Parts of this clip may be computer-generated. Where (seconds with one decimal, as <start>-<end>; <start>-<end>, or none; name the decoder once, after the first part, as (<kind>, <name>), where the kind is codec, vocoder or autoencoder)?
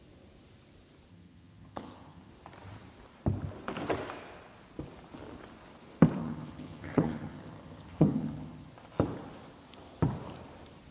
1.1-2.3 (vocoder, HiFi-GAN); 6.2-8.7